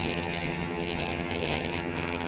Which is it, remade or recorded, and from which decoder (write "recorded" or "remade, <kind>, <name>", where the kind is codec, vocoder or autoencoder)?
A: remade, vocoder, HiFi-GAN